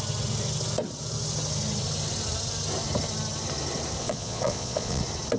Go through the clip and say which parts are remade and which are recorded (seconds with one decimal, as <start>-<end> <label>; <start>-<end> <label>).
0.0-4.0 recorded; 4.0-5.0 remade; 5.0-5.4 recorded